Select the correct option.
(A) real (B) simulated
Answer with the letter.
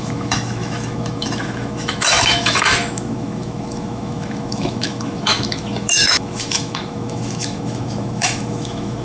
B